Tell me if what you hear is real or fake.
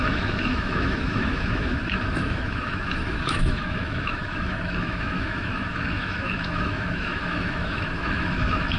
fake